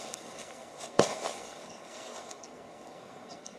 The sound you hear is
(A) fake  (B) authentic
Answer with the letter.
A